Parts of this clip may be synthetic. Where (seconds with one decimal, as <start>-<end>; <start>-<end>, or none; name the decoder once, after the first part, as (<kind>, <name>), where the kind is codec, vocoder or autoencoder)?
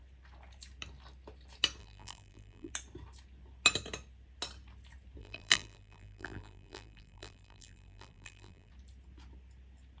1.8-2.7 (vocoder, BigVGAN v2); 5.2-8.7